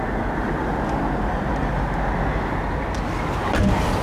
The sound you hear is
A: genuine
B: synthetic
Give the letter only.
A